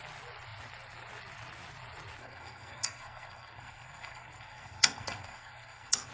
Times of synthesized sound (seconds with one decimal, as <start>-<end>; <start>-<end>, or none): 2.2-6.1